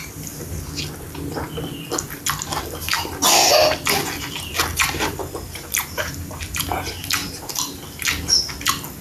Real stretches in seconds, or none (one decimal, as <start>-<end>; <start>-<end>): 0.0-4.7; 6.4-7.2; 7.8-9.0